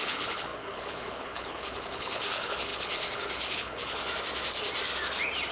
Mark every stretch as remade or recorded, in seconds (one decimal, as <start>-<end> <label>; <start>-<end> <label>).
0.0-4.0 remade; 4.0-5.5 recorded